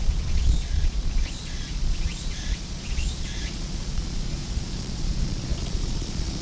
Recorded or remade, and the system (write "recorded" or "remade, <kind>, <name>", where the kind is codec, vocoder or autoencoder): remade, vocoder, Vocos